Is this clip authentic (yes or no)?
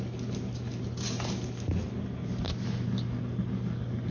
yes